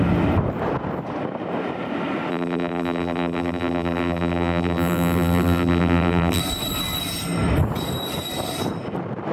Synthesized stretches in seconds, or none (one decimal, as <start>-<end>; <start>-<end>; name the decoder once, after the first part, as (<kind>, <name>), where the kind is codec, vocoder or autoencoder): 2.3-6.4 (vocoder, BigVGAN v2)

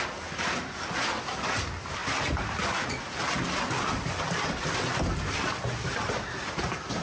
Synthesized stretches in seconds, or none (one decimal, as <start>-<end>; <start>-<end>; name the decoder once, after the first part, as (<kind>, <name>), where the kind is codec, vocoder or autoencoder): none

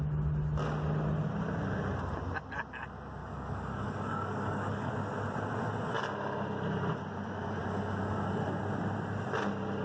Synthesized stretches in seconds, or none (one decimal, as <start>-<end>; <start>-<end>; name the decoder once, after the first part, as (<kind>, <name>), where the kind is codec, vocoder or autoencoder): 3.2-4.9 (codec, DAC)

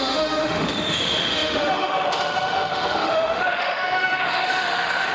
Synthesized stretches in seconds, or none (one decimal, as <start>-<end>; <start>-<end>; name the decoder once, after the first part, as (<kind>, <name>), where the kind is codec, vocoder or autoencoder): 0.0-5.1 (autoencoder, DAC-VAE)

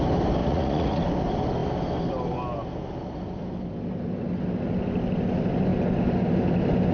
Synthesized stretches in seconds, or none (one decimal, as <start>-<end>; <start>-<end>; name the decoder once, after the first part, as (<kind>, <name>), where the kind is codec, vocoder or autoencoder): 0.4-1.0 (vocoder, Vocos)

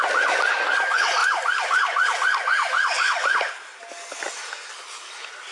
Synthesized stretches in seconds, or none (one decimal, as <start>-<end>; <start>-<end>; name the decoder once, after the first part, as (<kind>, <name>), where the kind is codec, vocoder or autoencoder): none

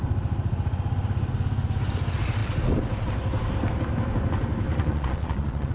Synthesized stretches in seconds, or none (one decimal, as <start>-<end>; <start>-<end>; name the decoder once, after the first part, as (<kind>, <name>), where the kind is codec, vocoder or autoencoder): 4.7-5.7 (vocoder, Vocos)